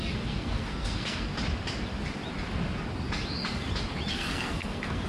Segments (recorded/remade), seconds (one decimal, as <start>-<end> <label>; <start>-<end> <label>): 0.0-1.3 remade; 1.3-4.1 recorded; 4.1-5.1 remade